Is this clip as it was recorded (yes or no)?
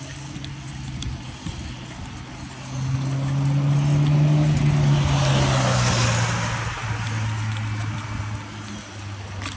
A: yes